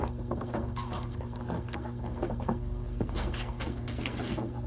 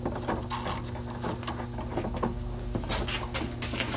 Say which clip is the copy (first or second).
first